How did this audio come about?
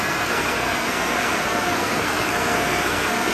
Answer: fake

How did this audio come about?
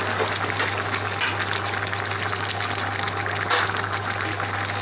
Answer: real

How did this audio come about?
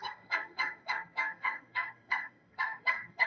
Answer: fake